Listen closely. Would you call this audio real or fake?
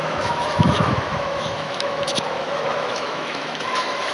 fake